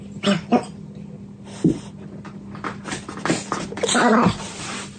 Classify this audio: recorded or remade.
recorded